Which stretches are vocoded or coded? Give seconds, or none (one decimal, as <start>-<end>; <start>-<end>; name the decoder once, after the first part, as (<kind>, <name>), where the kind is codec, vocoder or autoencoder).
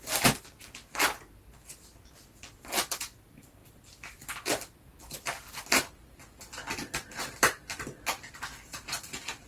none